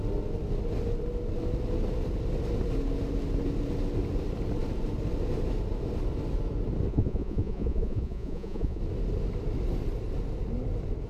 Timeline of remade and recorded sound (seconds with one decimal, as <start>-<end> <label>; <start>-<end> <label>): 0.0-6.9 recorded; 6.9-8.8 remade; 8.8-11.1 recorded